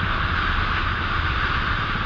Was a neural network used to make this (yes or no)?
no